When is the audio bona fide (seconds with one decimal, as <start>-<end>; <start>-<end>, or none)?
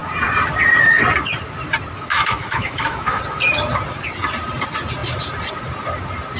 0.0-2.1; 3.2-6.4